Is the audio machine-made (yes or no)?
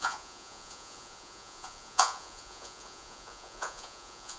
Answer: yes